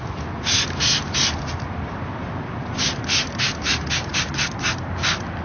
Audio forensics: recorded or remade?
recorded